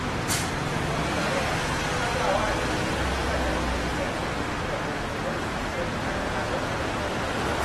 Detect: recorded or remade recorded